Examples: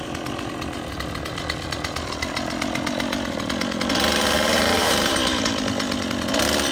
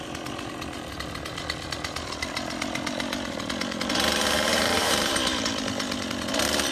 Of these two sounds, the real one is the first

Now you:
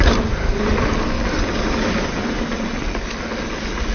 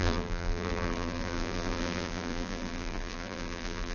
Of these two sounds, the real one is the first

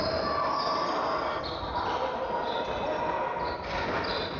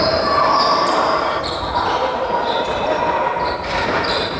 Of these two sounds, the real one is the first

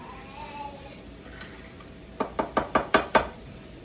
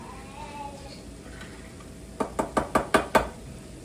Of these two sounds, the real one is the second